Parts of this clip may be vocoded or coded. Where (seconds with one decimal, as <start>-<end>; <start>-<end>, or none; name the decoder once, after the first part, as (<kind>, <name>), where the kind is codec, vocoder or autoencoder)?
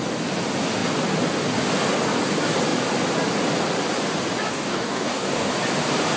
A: 4.5-5.5 (codec, DAC)